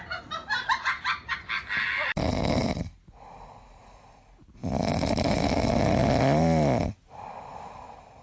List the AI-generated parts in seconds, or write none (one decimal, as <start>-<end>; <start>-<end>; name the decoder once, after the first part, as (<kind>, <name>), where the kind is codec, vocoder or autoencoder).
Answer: none